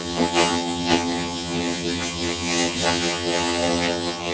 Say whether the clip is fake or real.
fake